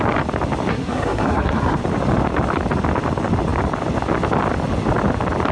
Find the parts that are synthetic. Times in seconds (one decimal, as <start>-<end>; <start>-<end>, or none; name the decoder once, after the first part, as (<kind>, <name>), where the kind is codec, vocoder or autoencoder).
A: 0.7-1.8 (codec, SNAC)